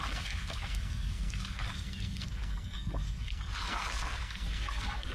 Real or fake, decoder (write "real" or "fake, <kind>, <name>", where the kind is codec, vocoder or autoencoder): fake, codec, SNAC